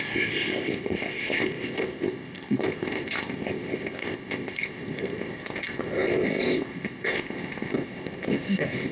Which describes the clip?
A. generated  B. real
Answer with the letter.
A